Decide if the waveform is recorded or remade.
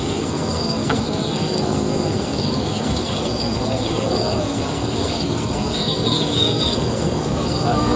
remade